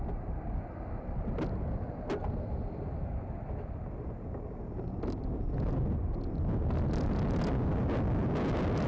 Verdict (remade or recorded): recorded